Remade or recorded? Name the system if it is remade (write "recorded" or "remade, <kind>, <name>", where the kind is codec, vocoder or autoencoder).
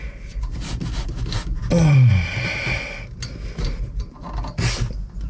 recorded